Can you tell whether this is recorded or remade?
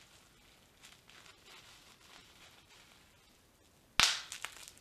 recorded